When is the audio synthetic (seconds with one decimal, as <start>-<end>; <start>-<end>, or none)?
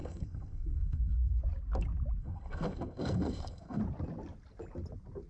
0.0-1.4; 2.2-3.8